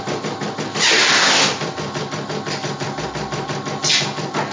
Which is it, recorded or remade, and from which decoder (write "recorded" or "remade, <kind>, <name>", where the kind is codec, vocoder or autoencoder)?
recorded